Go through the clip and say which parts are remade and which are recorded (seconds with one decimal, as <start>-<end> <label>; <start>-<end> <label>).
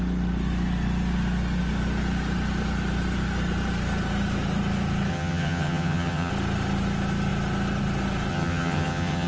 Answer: 0.0-5.1 recorded; 5.1-6.3 remade; 6.3-8.3 recorded; 8.3-9.3 remade